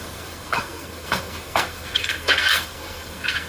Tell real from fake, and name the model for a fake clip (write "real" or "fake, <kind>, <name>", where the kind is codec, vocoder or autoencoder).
fake, codec, SNAC